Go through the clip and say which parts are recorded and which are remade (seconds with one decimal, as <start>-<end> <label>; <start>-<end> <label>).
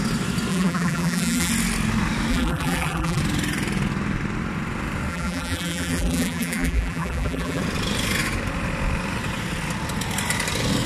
0.0-0.5 recorded; 0.5-1.5 remade; 1.5-2.3 recorded; 2.3-3.2 remade; 3.2-5.1 recorded; 5.1-7.6 remade; 7.6-10.9 recorded